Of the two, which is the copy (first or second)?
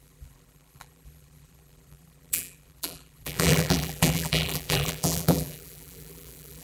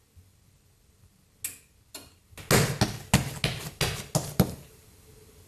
first